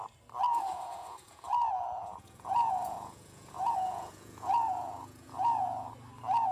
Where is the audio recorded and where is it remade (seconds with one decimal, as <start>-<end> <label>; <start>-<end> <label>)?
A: 0.0-0.5 recorded; 0.5-1.5 remade; 1.5-2.0 recorded; 2.0-5.9 remade; 5.9-6.5 recorded